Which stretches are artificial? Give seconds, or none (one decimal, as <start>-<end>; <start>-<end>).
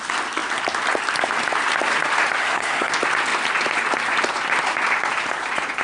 2.4-2.9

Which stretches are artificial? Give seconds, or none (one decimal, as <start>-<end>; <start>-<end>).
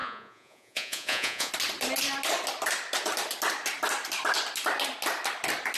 0.0-1.5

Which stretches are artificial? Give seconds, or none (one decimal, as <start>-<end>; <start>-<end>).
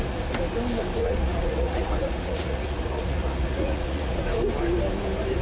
1.0-4.2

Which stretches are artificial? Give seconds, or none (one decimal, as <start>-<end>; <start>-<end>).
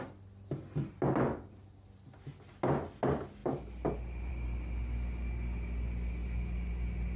none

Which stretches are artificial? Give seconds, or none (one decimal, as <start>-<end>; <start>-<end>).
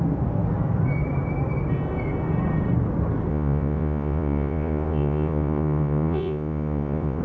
3.3-7.2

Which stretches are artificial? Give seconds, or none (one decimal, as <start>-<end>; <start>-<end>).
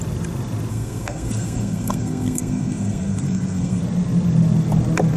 0.7-3.8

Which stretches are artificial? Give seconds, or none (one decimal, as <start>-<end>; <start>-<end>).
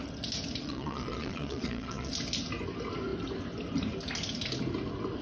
0.6-2.1